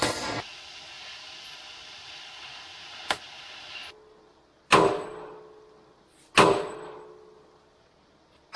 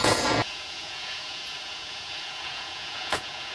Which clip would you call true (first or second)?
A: first